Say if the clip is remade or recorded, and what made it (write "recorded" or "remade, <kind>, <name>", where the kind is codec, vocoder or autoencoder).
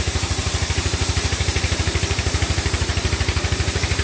remade, vocoder, BigVGAN v2